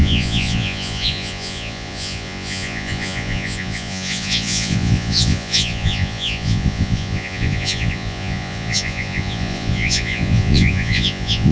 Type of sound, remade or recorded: remade